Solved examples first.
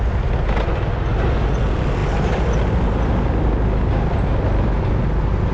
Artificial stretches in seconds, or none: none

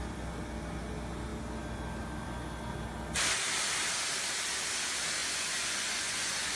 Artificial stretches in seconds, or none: 5.2-6.6 (vocoder, Vocos)

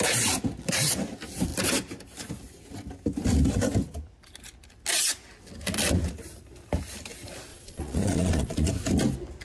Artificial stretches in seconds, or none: 7.5-8.7 (vocoder, Vocos)

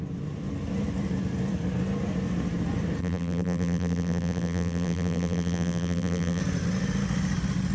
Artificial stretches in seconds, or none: 3.0-6.4 (vocoder, BigVGAN v2)

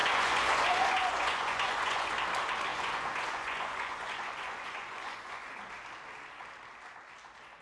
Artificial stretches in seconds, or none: 0.0-2.1 (vocoder, Vocos); 2.7-5.6

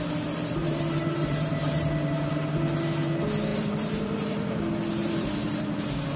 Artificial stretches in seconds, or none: 0.6-2.4 (vocoder, BigVGAN v2); 3.5-4.6; 5.0-5.8

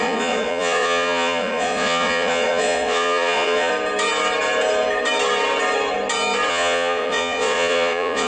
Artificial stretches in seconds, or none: 0.0-3.7 (vocoder, Vocos); 6.5-8.3

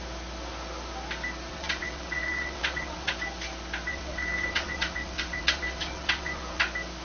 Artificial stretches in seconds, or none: 1.5-3.1 (vocoder, WaveNeXt); 3.9-6.6